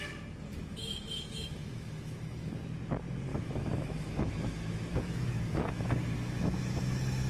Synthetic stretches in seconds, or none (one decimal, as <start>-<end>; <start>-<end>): 0.5-2.5; 3.3-7.3